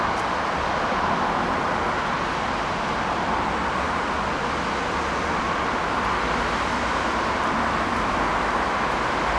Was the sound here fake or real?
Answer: real